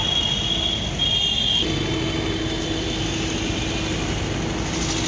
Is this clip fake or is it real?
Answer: real